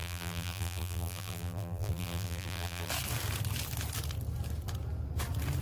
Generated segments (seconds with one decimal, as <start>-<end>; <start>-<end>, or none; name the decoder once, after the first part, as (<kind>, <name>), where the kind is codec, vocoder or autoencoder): 0.0-2.9 (vocoder, BigVGAN v2)